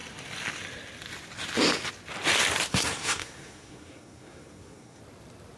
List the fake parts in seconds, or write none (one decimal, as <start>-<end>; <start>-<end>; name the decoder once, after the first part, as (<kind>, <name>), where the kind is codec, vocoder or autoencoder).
2.7-5.0 (codec, SNAC)